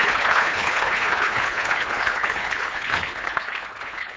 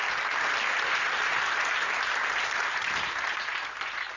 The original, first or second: second